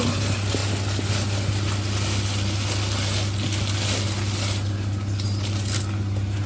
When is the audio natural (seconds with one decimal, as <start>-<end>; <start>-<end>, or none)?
0.0-6.5